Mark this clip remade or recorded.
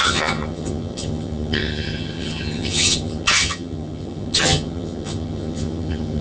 remade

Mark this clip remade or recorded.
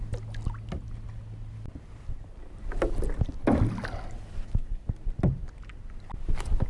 recorded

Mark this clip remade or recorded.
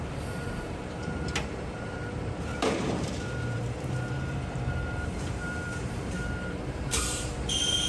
remade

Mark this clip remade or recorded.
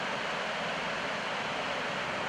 remade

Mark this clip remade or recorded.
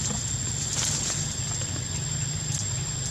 recorded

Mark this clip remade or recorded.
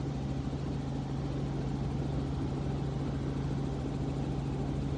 recorded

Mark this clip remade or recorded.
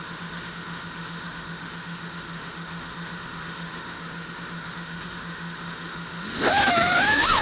remade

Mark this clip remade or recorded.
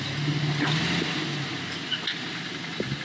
recorded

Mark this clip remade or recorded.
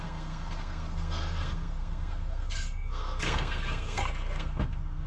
remade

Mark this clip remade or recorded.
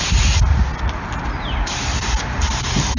recorded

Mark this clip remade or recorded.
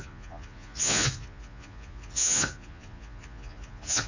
remade